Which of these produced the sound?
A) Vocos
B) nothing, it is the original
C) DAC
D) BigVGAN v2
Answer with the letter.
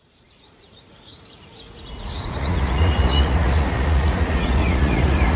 A